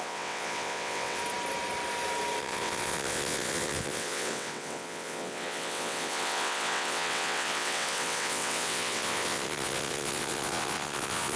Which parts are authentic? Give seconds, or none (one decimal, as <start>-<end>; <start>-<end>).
1.2-2.4